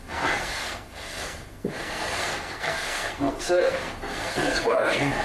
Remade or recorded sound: remade